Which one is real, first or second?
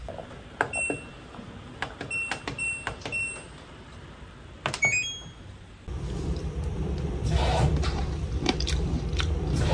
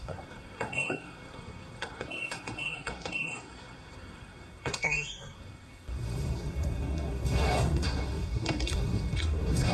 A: first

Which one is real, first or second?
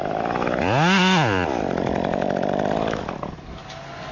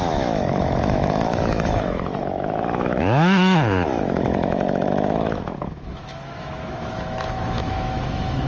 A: first